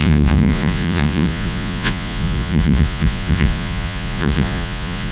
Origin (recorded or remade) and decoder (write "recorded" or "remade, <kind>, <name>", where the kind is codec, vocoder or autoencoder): remade, vocoder, Vocos